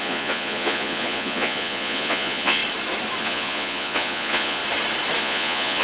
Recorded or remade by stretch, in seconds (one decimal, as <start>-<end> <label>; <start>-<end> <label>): 0.0-2.6 remade; 2.6-3.2 recorded; 3.2-4.6 remade; 4.6-5.2 recorded; 5.2-5.8 remade